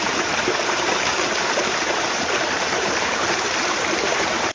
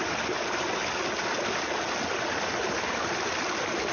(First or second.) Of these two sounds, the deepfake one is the first